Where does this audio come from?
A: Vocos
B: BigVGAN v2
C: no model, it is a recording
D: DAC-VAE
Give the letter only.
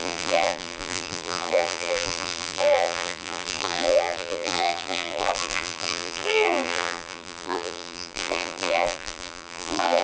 B